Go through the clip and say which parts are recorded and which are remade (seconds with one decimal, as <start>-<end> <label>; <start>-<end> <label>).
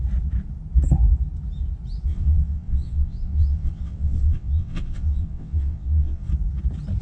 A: 0.0-2.1 recorded; 2.1-6.3 remade; 6.3-7.0 recorded